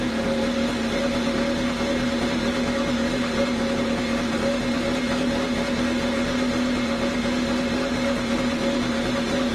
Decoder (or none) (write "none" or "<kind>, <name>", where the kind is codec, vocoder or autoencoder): none